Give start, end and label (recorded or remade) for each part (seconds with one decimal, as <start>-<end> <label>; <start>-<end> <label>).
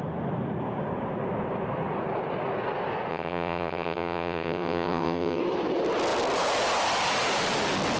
0.0-3.1 recorded; 3.1-5.4 remade; 5.4-8.0 recorded